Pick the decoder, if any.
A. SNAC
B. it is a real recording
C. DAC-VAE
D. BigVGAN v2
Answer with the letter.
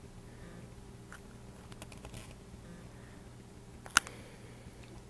B